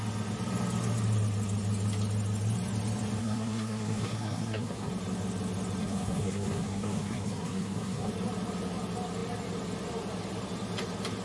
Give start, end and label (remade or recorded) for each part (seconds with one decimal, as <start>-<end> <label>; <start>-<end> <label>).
0.0-3.2 recorded; 3.2-4.9 remade; 4.9-5.8 recorded; 5.8-8.1 remade; 8.1-11.2 recorded